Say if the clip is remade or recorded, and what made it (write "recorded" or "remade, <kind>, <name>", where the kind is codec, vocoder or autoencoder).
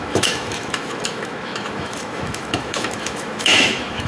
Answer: remade, autoencoder, DAC-VAE